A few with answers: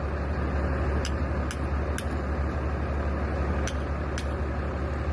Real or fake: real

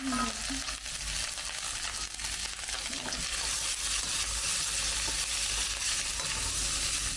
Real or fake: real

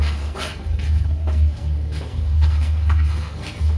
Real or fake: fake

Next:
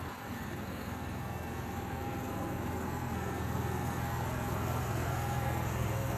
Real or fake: fake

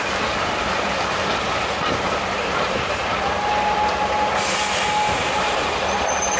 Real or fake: real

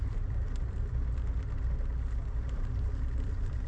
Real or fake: real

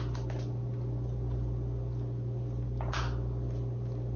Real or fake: real